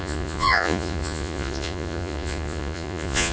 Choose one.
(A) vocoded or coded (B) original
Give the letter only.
A